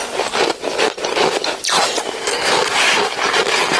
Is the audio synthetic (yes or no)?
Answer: no